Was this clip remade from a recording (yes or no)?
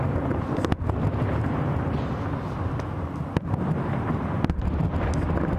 no